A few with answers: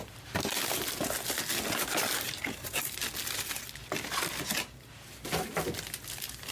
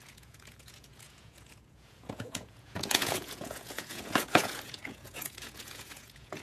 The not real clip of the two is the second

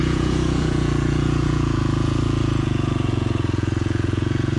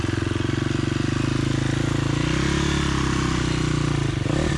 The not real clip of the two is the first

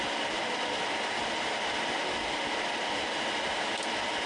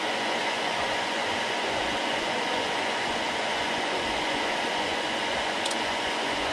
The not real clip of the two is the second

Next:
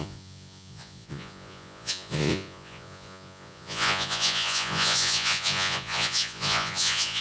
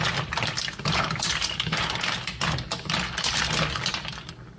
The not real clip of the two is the first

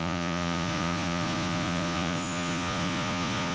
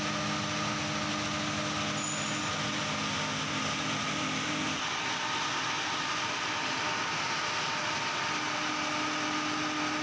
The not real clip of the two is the first